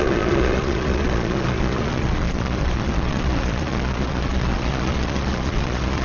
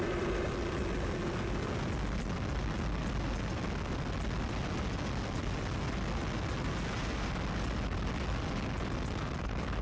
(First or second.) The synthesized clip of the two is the first